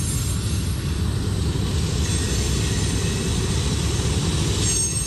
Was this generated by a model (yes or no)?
no